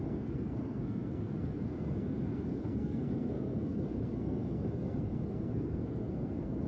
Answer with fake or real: fake